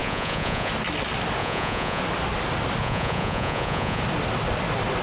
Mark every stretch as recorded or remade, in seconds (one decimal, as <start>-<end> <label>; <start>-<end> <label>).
0.0-0.7 remade; 0.7-1.4 recorded; 1.4-2.0 remade; 2.0-2.8 recorded; 2.8-4.0 remade; 4.0-5.0 recorded